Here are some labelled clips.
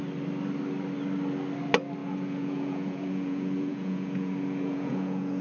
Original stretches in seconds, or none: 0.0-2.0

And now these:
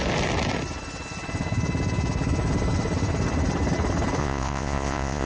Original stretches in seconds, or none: 0.0-4.2